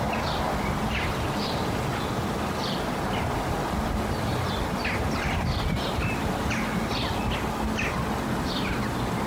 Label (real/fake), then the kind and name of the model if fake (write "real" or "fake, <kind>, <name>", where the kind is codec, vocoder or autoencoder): real